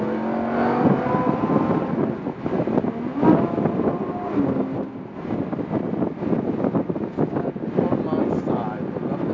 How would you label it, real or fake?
real